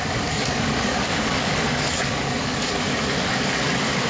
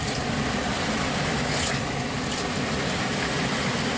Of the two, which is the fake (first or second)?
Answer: first